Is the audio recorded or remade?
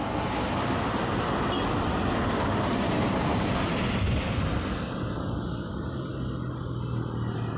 recorded